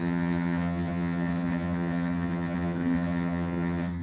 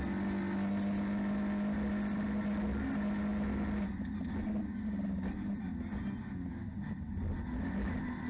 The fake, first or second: first